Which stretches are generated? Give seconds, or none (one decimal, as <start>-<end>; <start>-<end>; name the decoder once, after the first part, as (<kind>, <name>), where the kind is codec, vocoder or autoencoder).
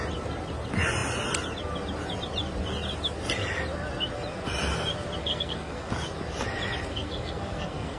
5.2-5.9 (codec, SNAC); 6.9-8.0